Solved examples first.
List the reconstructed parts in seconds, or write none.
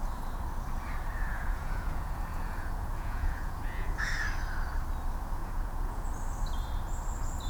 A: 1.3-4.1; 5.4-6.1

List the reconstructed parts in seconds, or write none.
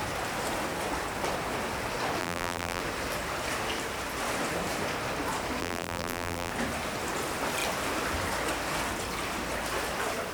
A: 2.2-2.8; 5.6-6.5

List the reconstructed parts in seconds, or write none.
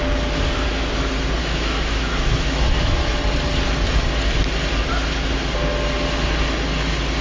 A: 1.4-3.1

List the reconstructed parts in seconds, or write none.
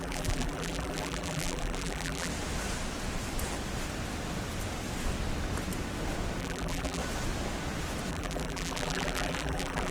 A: 0.0-2.3; 6.4-7.0; 8.1-9.9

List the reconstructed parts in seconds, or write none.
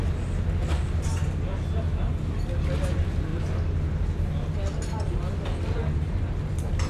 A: none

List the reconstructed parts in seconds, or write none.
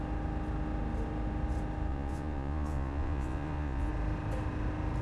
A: 1.9-3.9